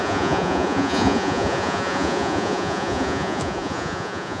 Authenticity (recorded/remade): remade